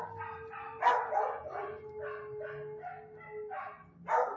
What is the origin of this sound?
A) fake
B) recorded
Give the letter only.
B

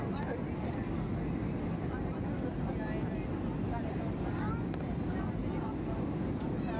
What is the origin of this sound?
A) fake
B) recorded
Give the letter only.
B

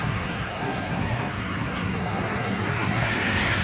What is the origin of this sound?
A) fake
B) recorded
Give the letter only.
A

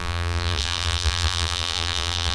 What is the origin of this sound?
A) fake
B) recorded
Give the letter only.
A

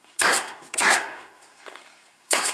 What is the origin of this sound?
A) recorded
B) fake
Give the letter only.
B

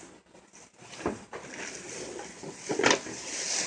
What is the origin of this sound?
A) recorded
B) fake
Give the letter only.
A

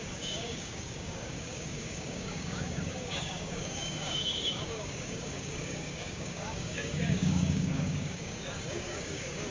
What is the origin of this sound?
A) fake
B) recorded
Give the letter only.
A